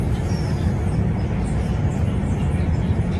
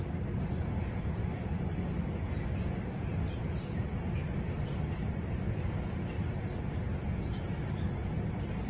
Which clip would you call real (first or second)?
second